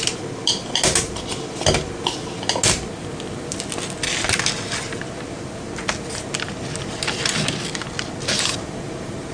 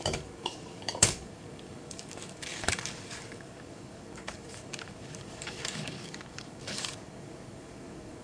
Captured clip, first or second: first